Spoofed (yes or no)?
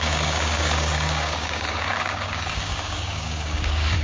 yes